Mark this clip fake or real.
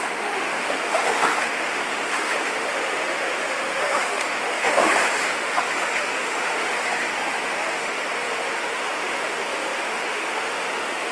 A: fake